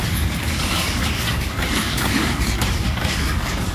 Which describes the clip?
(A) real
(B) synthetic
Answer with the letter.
B